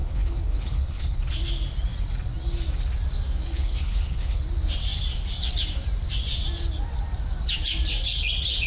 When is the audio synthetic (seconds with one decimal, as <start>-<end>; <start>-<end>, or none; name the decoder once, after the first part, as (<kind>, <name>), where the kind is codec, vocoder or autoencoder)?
0.0-1.2 (codec, HILCodec); 3.5-4.4